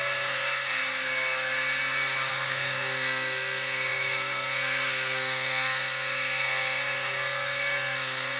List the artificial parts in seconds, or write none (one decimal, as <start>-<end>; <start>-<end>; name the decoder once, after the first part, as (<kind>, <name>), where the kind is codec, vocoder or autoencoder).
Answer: 0.0-0.8 (codec, SNAC); 2.3-8.4